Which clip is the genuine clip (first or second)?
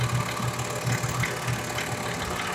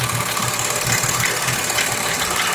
first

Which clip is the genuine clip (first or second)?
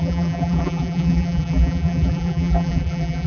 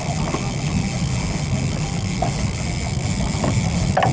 second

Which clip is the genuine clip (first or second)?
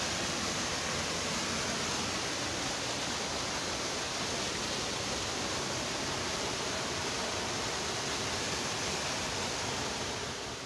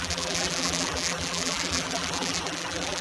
first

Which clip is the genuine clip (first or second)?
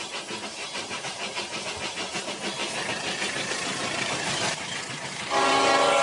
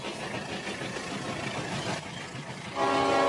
second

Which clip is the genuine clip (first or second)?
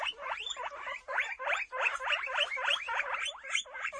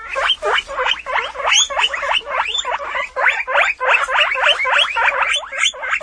second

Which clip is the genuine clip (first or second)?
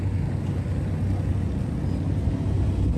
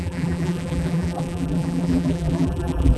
first